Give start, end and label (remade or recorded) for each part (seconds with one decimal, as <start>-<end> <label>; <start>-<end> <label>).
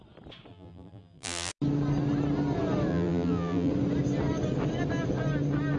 0.0-0.5 recorded; 0.5-1.5 remade; 1.5-2.9 recorded; 2.9-3.7 remade; 3.7-5.8 recorded